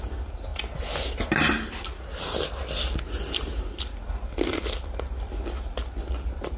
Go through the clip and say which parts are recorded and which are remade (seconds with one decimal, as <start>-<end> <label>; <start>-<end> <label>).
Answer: 0.0-6.6 recorded